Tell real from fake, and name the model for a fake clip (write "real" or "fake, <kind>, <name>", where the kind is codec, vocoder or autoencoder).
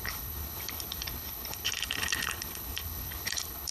fake, codec, HILCodec